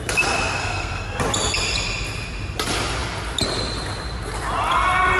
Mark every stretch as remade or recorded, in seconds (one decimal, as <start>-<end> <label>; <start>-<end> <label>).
0.0-0.6 recorded; 0.6-1.2 remade; 1.2-5.2 recorded